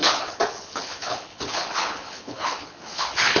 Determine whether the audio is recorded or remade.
remade